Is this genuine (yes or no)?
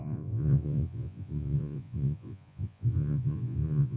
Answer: no